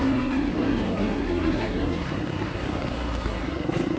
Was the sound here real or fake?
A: fake